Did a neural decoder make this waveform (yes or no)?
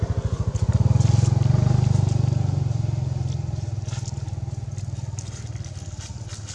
no